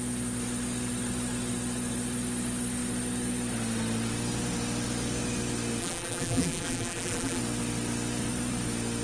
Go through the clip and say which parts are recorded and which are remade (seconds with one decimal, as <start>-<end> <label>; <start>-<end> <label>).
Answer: 0.0-5.8 recorded; 5.8-7.4 remade; 7.4-9.0 recorded